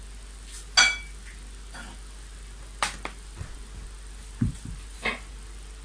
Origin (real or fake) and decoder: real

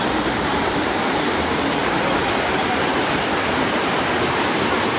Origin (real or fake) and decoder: fake, vocoder, BigVGAN v2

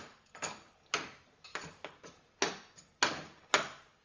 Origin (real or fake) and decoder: real